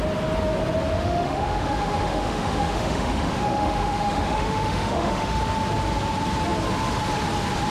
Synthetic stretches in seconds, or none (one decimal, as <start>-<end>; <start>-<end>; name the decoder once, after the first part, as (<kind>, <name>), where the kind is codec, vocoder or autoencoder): 1.0-5.4 (autoencoder, DAC-VAE)